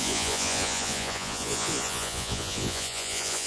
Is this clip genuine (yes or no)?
no